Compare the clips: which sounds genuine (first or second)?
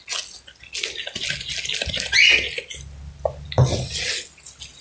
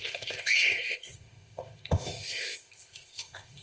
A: first